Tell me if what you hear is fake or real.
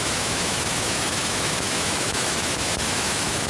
fake